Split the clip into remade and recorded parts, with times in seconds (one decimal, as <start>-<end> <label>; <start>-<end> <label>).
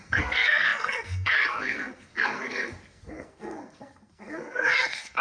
0.0-5.2 remade